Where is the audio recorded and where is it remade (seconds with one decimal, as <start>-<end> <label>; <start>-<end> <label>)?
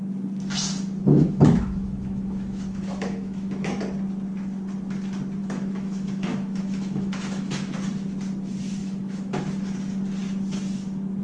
0.0-1.1 recorded; 1.1-3.8 remade; 3.8-5.4 recorded; 5.4-7.7 remade; 7.7-8.8 recorded; 8.8-9.4 remade; 9.4-11.2 recorded